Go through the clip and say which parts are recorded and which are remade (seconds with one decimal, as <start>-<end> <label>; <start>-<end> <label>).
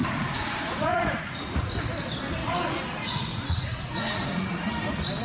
0.0-1.7 remade; 1.7-2.4 recorded; 2.4-4.7 remade; 4.7-5.2 recorded